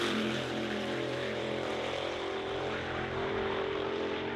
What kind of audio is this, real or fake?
fake